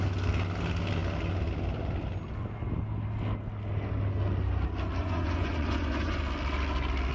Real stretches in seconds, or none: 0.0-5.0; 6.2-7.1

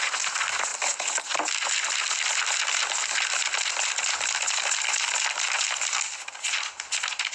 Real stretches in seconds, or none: 0.0-7.3

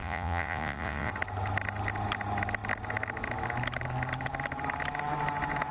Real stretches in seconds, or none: 1.1-5.7

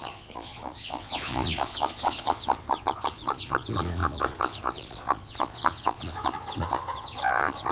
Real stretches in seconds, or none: none

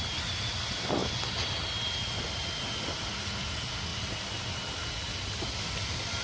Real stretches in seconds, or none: 0.0-6.2

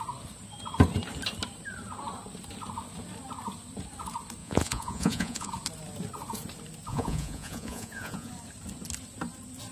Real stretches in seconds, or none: 0.0-4.4; 5.5-6.9; 8.3-9.7